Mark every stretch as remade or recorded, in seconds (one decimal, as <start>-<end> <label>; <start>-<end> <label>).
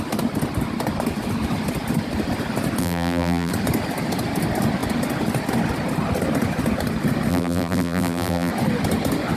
0.0-2.8 recorded; 2.8-3.5 remade; 3.5-7.3 recorded; 7.3-8.5 remade; 8.5-9.4 recorded